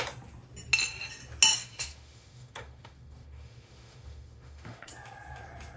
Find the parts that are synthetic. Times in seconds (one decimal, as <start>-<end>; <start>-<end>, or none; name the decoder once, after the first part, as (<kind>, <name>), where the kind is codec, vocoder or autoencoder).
1.5-4.9 (autoencoder, DAC-VAE)